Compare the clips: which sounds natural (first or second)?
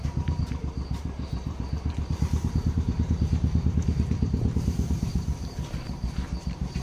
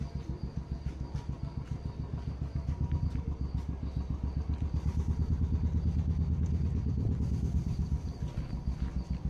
second